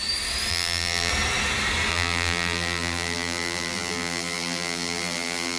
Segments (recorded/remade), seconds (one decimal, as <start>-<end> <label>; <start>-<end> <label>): 0.0-0.5 recorded; 0.5-1.1 remade; 1.1-1.9 recorded; 1.9-5.6 remade

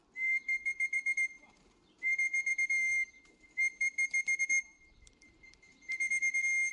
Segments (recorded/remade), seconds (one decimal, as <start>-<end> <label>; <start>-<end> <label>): 0.0-3.7 remade; 3.7-4.4 recorded; 4.4-5.7 remade; 5.7-6.7 recorded